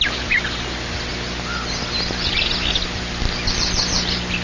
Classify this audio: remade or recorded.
recorded